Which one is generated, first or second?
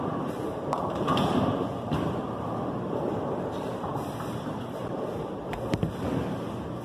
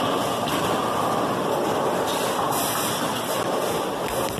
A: first